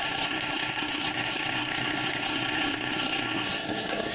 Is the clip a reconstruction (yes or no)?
yes